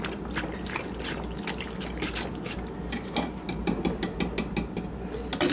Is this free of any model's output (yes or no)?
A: yes